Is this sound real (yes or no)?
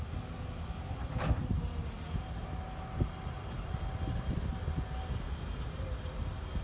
yes